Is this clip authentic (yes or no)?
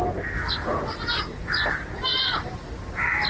yes